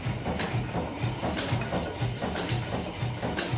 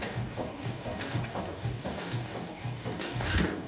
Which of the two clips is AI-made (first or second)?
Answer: second